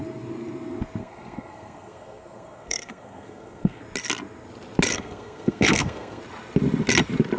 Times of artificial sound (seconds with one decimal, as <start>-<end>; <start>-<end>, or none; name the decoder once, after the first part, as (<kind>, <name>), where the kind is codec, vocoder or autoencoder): 1.0-3.8 (codec, SNAC); 4.9-6.2